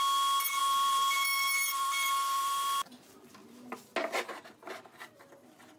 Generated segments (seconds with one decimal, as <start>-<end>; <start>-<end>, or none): 0.6-3.3